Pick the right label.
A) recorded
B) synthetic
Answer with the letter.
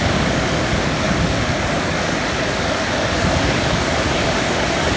B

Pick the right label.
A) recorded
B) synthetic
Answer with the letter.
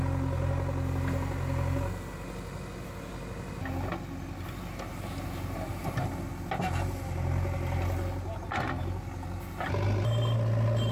A